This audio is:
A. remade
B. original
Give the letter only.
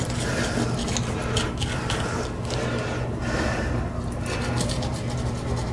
B